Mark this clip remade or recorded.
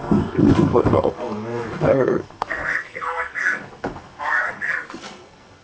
remade